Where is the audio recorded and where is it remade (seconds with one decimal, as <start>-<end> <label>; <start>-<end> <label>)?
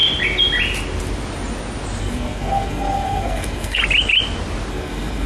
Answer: 0.0-2.0 recorded; 2.0-3.8 remade; 3.8-4.7 recorded; 4.7-5.3 remade